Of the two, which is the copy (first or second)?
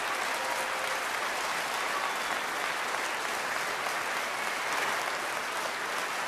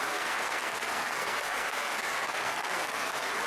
second